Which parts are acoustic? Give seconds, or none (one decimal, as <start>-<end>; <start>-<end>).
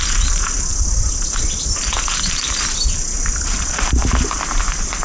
0.0-0.7; 3.7-5.0